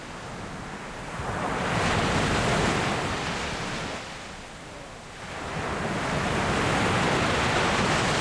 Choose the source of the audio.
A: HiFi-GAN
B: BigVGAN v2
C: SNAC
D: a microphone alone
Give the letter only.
D